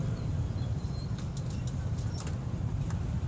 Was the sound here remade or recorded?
recorded